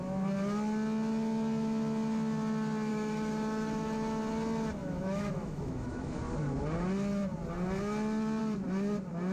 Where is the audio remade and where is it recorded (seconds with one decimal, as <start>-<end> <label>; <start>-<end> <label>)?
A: 0.0-2.9 recorded; 2.9-4.2 remade; 4.2-4.8 recorded; 4.8-6.2 remade; 6.2-9.3 recorded